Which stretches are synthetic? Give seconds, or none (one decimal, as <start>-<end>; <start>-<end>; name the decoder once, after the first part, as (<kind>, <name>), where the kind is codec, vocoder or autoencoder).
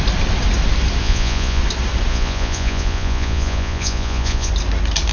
1.0-1.6 (vocoder, Vocos); 2.1-4.5